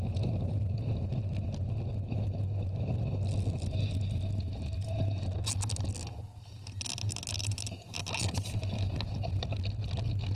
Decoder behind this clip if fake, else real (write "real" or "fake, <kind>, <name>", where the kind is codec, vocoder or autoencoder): real